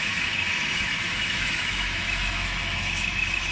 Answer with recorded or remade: remade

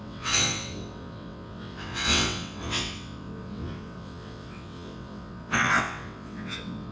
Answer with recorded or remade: remade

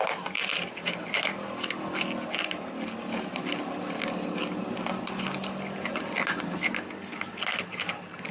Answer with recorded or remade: recorded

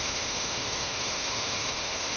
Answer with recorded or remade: remade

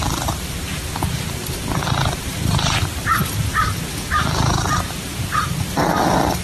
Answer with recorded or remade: remade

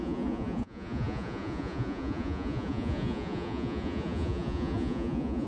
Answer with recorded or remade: remade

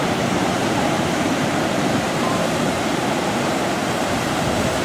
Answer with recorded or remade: remade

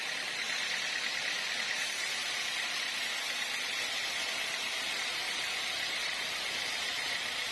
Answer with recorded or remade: recorded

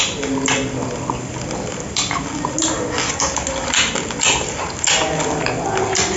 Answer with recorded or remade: recorded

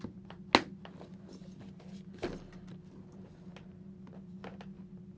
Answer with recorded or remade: recorded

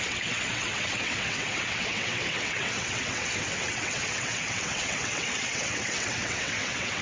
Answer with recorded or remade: remade